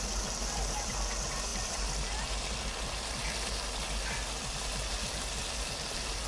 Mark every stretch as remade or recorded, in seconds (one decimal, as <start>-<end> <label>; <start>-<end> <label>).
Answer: 0.0-6.3 recorded